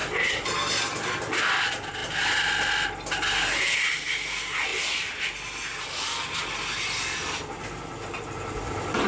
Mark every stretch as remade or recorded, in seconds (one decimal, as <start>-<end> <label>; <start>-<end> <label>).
0.0-9.1 recorded